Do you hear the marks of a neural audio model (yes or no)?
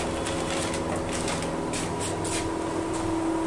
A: no